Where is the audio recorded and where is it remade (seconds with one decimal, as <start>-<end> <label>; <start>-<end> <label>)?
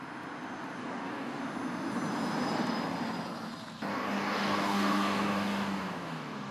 0.0-0.8 recorded; 0.8-1.4 remade; 1.4-3.9 recorded; 3.9-6.5 remade